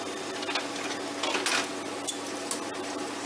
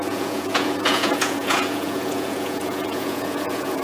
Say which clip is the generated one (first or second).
second